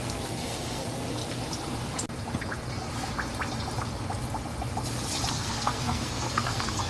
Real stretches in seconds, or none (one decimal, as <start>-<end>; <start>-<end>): 1.2-5.3